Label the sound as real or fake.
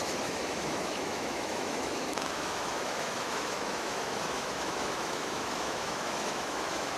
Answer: fake